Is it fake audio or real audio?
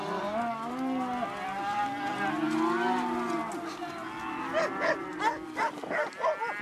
real